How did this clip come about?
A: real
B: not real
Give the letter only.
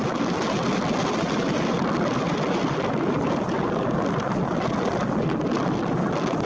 A